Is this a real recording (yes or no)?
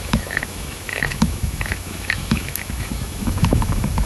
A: no